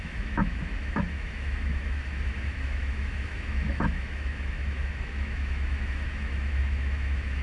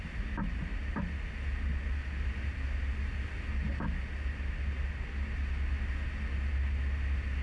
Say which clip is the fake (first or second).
first